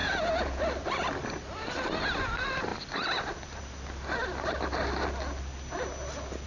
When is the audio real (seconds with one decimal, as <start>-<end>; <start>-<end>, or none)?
0.6-6.5